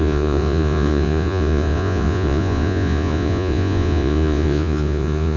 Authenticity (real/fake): fake